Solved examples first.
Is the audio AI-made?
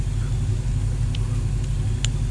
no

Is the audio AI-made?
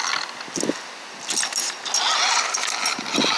no